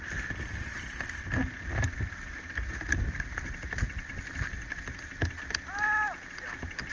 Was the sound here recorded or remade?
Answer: recorded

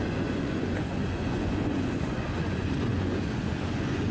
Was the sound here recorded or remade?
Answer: remade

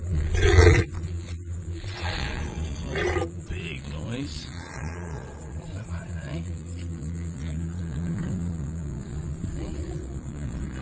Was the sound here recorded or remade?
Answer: remade